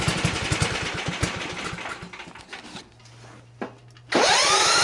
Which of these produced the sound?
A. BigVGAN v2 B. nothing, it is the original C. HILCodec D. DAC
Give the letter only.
B